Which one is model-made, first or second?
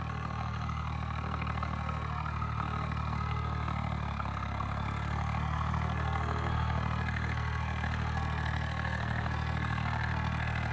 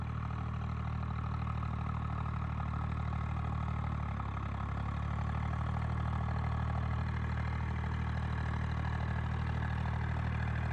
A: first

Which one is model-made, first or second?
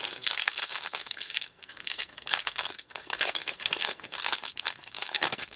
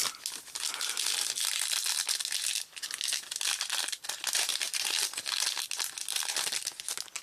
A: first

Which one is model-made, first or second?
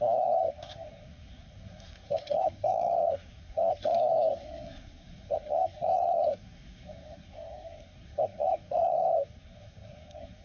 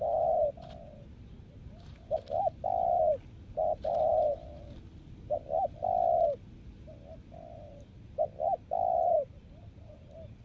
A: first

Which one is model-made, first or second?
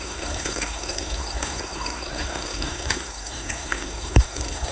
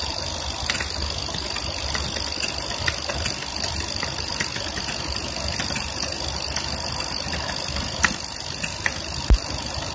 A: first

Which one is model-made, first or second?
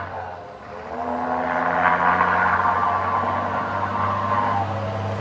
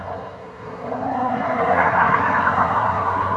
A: second